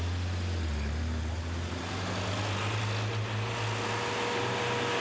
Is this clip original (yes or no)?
yes